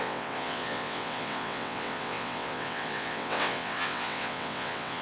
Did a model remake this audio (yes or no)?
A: yes